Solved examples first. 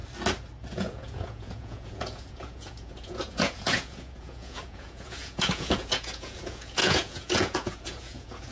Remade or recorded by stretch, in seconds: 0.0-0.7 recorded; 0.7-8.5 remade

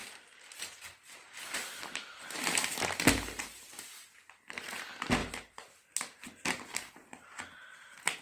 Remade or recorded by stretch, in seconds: 0.0-8.2 recorded

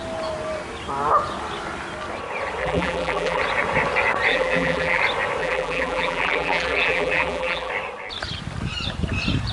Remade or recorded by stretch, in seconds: 0.0-2.6 recorded; 2.6-3.4 remade; 3.4-4.3 recorded; 4.3-5.0 remade; 5.0-5.4 recorded; 5.4-7.7 remade; 7.7-9.5 recorded

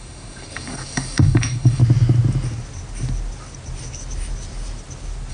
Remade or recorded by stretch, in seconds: 0.0-1.8 remade; 1.8-5.3 recorded

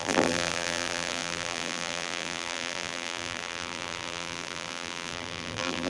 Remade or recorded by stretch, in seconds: 0.0-5.9 remade

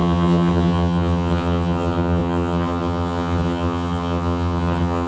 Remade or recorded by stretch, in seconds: 0.0-5.1 remade

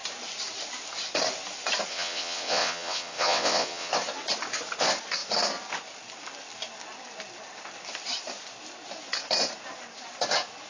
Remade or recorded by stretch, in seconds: 0.0-1.9 recorded; 1.9-3.9 remade; 3.9-10.7 recorded